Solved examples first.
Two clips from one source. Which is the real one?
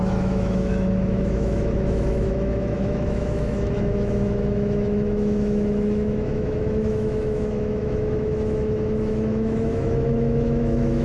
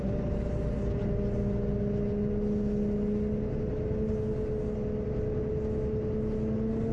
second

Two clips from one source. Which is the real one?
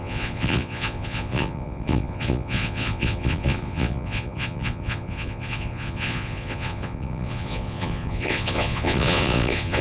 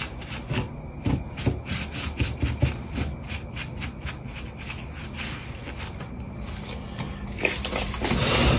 second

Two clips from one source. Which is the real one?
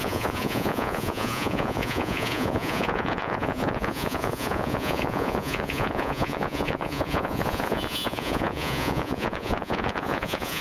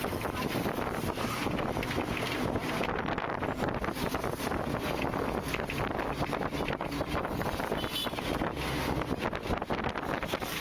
second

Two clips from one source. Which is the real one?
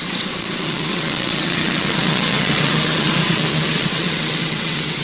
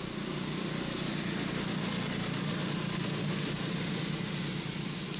second